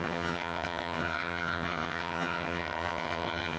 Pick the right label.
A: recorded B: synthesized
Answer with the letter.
B